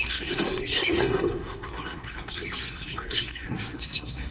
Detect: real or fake fake